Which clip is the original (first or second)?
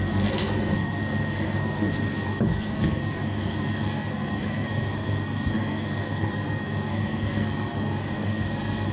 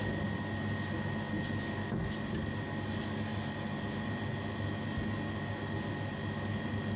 second